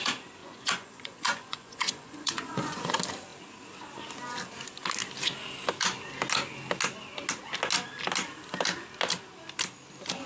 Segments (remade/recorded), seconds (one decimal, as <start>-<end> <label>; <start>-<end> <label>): 0.0-0.4 recorded; 0.4-2.9 remade; 2.9-10.3 recorded